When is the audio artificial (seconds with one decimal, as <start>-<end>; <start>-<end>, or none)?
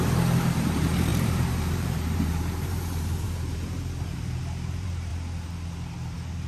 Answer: 0.0-5.1